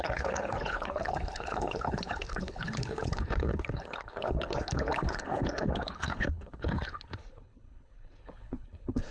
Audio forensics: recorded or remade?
remade